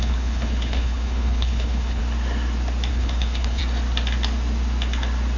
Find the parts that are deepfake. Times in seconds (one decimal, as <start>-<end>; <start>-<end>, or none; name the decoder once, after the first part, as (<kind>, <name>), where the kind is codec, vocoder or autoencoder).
0.0-2.0 (codec, HILCodec); 2.9-3.6